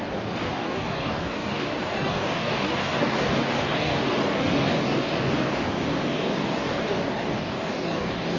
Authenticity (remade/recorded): remade